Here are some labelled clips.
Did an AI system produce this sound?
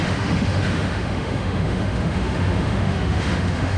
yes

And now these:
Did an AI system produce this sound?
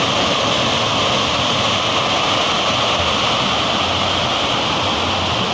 no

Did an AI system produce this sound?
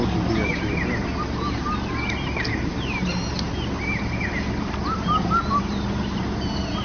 no